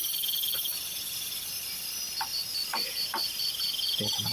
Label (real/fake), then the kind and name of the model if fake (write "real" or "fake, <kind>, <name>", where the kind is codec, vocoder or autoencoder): real